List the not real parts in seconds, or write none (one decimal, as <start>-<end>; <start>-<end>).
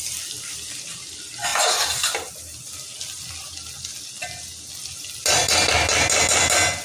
none